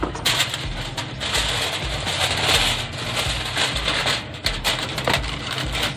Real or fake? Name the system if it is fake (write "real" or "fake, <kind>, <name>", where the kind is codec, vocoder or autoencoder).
real